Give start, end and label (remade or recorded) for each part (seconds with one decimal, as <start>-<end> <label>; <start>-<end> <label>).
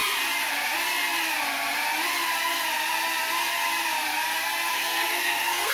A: 0.0-4.7 recorded; 4.7-5.7 remade